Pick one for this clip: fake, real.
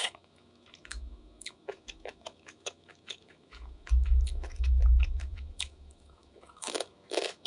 fake